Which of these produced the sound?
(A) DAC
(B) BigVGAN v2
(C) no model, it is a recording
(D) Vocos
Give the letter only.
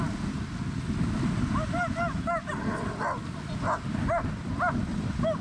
C